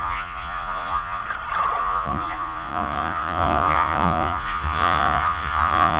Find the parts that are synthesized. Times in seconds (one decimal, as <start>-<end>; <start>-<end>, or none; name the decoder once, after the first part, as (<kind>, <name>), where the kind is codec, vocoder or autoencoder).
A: 0.0-1.2 (vocoder, Vocos); 1.8-6.0